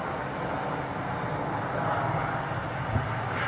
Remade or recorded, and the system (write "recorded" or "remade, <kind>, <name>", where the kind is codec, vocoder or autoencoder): recorded